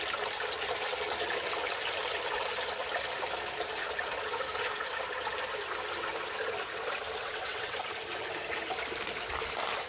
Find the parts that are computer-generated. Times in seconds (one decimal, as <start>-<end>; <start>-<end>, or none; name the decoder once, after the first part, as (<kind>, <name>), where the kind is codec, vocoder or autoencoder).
7.2-7.8 (vocoder, WaveNeXt)